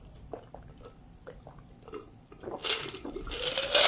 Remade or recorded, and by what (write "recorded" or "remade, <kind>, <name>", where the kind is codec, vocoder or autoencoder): recorded